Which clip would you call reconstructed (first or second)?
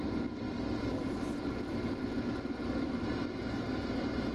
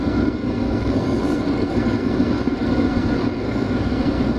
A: second